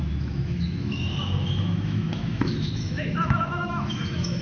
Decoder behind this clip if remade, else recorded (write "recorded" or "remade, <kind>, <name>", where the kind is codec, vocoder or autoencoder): remade, autoencoder, DAC-VAE